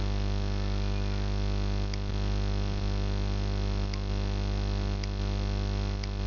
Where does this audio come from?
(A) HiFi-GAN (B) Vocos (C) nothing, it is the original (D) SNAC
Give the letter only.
C